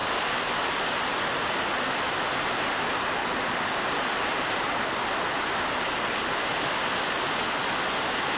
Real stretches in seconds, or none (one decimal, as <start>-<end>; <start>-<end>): 2.0-3.2; 5.4-6.5; 7.0-8.4